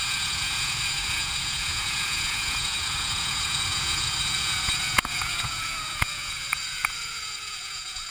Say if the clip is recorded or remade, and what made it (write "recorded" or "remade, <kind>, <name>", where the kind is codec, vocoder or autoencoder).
remade, vocoder, Vocos